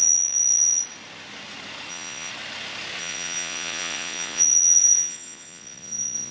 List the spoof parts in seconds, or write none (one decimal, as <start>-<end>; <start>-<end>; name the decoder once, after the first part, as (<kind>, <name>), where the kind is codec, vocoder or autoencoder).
0.0-0.8 (vocoder, Vocos); 1.9-2.3; 3.0-6.3